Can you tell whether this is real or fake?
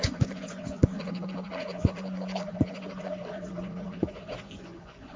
fake